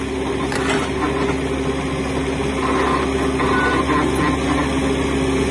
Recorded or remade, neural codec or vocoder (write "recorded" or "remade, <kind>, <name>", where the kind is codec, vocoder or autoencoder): recorded